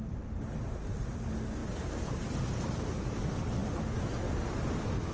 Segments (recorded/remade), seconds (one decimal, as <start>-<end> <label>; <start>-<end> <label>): 0.0-5.1 recorded